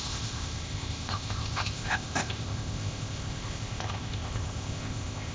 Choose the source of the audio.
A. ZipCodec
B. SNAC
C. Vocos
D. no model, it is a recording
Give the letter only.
A